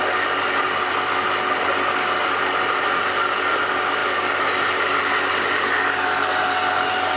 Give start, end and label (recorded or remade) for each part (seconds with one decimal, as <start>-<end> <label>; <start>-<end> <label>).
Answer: 0.0-7.2 recorded